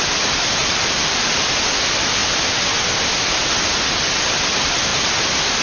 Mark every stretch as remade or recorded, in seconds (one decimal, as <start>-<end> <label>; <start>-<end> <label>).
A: 0.0-0.6 recorded; 0.6-1.6 remade; 1.6-4.9 recorded; 4.9-5.6 remade